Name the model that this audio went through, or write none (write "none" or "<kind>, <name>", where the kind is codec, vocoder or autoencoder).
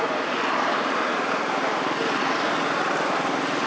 none